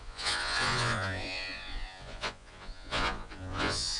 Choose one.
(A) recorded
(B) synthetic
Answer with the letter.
B